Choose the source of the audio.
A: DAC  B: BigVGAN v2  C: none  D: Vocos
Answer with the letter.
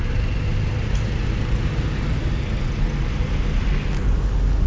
C